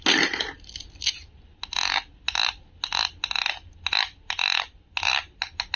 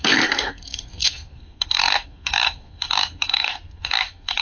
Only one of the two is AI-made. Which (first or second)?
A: second